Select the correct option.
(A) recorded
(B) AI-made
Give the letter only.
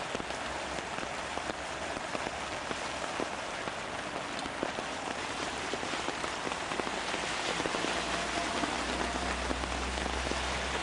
A